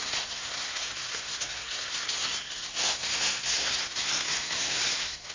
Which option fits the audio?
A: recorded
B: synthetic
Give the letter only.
B